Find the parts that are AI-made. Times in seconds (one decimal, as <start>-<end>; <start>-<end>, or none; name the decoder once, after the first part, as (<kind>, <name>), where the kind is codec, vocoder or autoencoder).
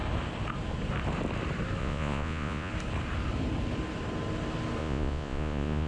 1.8-2.7 (vocoder, Vocos); 4.8-5.9